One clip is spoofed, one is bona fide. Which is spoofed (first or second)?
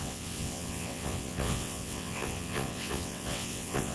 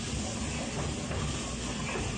first